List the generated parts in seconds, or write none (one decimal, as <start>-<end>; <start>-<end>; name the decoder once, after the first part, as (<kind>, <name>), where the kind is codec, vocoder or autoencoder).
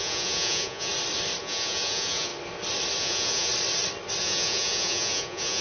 0.0-0.9 (vocoder, Vocos); 1.4-2.3; 3.0-3.5; 4.2-5.6